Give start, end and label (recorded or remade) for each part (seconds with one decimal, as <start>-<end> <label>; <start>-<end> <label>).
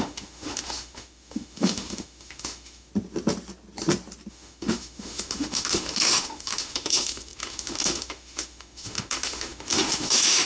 0.0-2.9 remade; 2.9-4.3 recorded; 4.3-10.5 remade